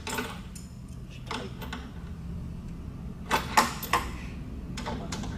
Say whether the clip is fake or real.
real